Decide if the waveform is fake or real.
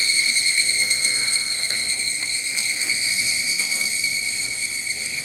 fake